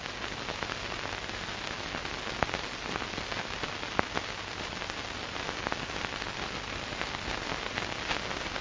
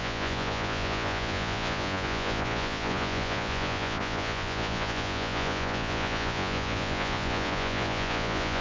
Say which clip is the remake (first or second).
second